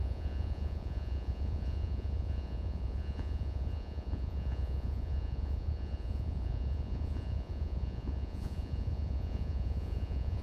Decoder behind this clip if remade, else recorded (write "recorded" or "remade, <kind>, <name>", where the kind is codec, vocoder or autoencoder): remade, vocoder, Vocos